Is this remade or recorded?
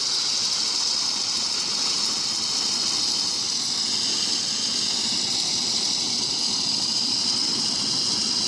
recorded